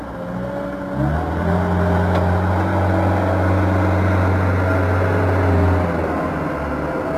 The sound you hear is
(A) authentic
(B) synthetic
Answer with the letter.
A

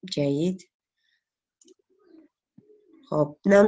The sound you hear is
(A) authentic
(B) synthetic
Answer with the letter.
A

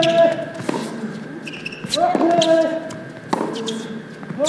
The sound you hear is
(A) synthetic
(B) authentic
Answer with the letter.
B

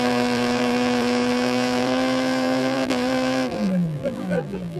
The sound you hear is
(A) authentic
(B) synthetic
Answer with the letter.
B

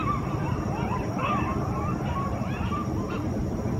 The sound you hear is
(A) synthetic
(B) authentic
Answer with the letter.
A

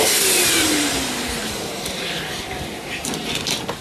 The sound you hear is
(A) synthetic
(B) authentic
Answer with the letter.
A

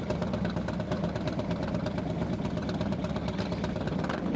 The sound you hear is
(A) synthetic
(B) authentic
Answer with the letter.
B